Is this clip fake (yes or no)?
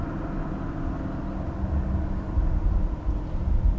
no